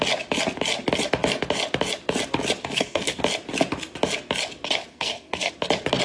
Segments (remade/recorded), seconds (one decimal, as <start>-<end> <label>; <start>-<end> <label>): 0.0-2.6 recorded; 2.6-3.2 remade; 3.2-4.9 recorded; 4.9-5.5 remade; 5.5-6.0 recorded